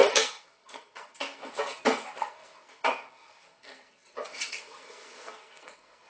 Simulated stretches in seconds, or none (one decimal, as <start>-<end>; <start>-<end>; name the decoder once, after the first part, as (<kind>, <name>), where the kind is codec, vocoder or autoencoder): 0.0-6.1 (codec, SNAC)